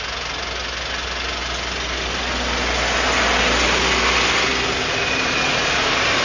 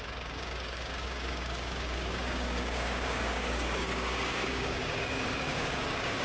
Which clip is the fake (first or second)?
second